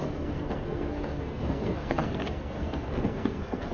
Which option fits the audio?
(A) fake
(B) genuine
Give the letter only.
A